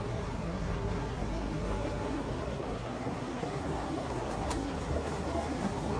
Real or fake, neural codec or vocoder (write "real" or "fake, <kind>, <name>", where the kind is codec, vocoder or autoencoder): fake, codec, SNAC